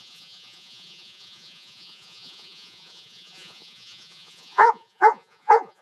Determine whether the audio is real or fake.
fake